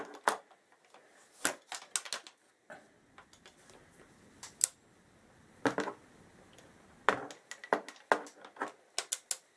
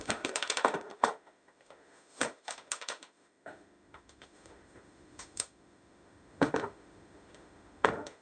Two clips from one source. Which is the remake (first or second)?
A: second